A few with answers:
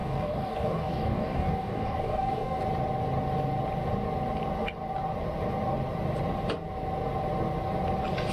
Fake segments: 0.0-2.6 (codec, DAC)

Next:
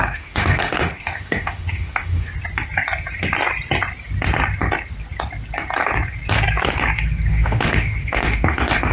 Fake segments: 0.0-2.3 (autoencoder, DAC-VAE); 7.3-8.9

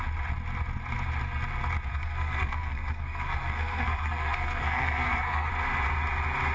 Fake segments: 1.9-5.5 (codec, SNAC)

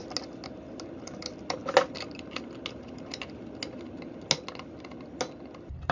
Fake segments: none

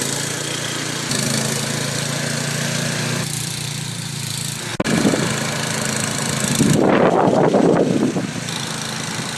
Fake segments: none

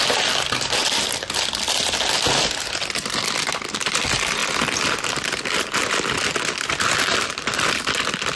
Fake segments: none